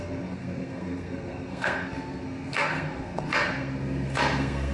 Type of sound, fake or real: fake